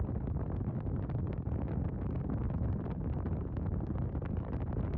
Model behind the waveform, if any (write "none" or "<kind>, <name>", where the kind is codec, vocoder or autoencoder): vocoder, BigVGAN v2